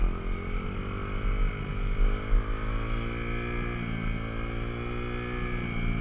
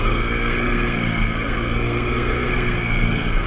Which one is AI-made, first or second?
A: second